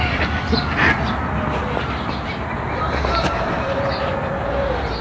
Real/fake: real